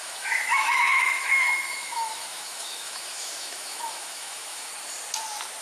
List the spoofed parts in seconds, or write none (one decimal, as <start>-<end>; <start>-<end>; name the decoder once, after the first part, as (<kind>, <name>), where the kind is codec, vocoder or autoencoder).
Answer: 0.0-4.7 (autoencoder, DAC-VAE)